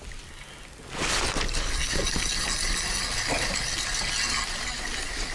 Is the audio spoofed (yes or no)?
no